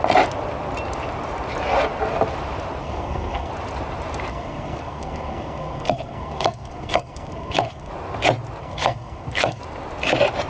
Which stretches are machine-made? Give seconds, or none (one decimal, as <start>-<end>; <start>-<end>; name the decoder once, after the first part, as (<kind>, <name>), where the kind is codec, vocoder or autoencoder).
2.8-3.5 (codec, SNAC); 4.3-7.9; 8.6-9.6